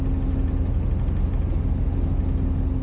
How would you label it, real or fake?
real